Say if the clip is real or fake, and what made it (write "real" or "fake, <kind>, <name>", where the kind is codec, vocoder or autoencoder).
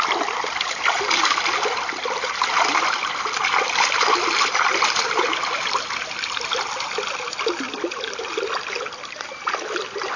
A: real